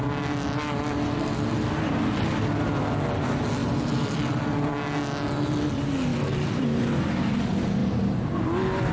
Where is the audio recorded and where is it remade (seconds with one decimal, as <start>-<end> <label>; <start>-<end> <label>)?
0.0-3.6 recorded; 3.6-4.7 remade; 4.7-6.1 recorded; 6.1-7.1 remade; 7.1-8.9 recorded